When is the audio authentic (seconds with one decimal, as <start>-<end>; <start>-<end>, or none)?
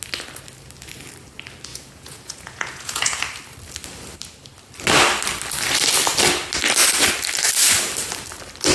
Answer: 0.0-1.7; 3.2-8.7